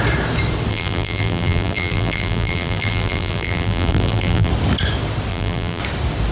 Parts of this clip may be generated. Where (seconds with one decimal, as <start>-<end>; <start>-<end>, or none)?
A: 0.7-4.5; 5.3-5.8